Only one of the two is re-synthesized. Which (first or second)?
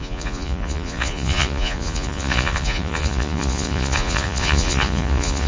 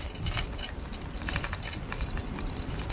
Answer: first